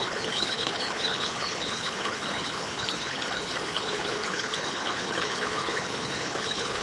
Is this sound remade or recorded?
remade